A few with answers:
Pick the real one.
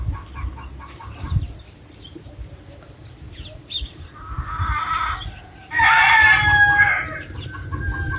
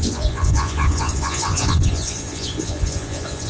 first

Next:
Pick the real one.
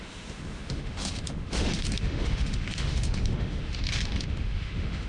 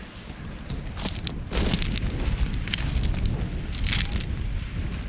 second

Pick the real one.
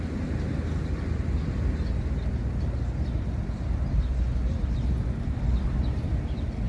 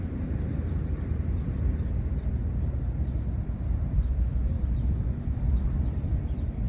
first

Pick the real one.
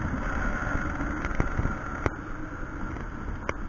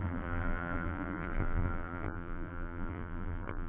first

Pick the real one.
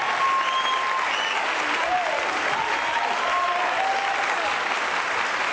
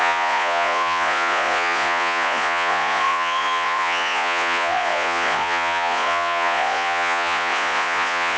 first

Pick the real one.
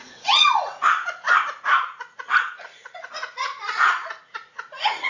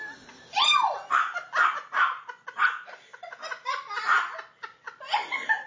second